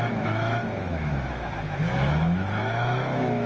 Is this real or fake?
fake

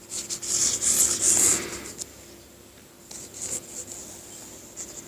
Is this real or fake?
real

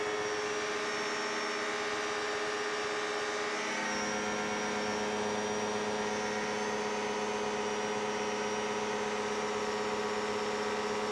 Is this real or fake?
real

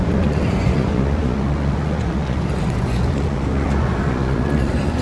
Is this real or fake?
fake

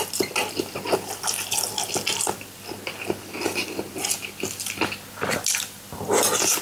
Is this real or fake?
real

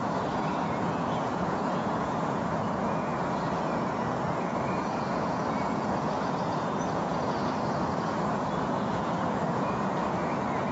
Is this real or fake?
fake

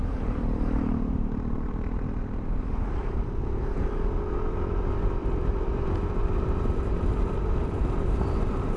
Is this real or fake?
fake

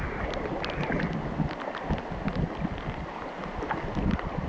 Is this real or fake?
real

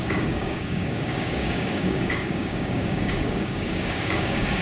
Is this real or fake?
fake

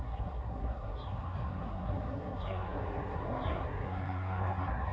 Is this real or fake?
fake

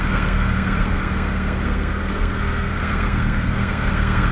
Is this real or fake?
fake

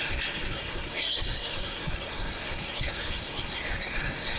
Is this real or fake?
fake